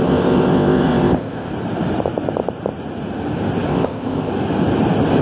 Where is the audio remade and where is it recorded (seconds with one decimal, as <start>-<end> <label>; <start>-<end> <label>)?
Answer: 0.0-1.5 remade; 1.5-3.7 recorded; 3.7-4.3 remade; 4.3-5.2 recorded